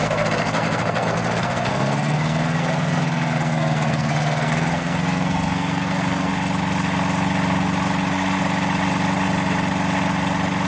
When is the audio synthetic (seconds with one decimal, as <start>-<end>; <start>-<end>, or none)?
0.0-6.3